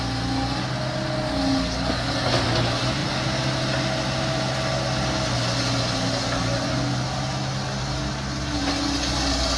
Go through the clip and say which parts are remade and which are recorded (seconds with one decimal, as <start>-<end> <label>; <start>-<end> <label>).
0.0-9.6 recorded